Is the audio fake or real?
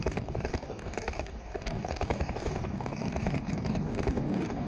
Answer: fake